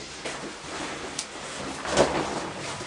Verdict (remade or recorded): recorded